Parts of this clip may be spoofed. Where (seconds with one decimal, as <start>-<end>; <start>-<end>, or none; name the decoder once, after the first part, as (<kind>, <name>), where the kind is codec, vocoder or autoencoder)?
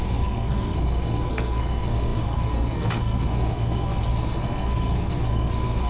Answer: 0.0-5.9 (codec, SNAC)